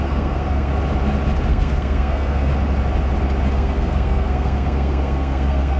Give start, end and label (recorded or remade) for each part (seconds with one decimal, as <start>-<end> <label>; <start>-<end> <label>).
0.0-0.7 remade; 0.7-1.5 recorded; 1.5-2.5 remade; 2.5-3.5 recorded; 3.5-5.8 remade